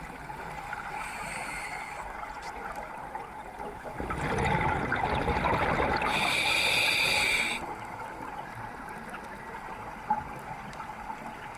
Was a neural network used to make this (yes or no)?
no